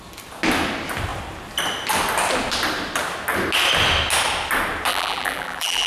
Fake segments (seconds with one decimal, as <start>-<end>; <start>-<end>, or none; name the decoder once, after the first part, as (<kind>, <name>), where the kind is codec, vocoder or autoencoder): 4.9-5.9 (vocoder, BigVGAN v2)